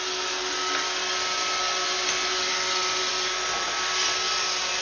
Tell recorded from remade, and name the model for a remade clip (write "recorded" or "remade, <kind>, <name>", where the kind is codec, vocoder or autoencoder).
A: recorded